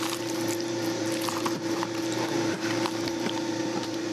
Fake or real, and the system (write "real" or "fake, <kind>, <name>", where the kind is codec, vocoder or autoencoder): fake, vocoder, BigVGAN v2